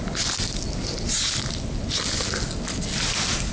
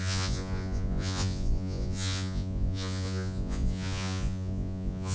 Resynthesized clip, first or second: second